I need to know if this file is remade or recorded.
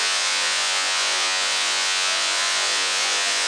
remade